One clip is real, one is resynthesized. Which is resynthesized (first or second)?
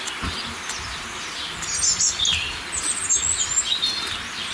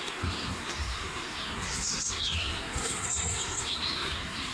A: second